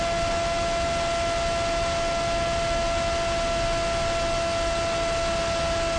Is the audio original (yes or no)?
yes